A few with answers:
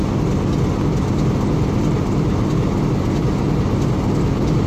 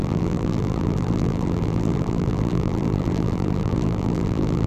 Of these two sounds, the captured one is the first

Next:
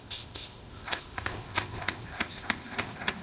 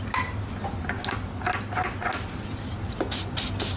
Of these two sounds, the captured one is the second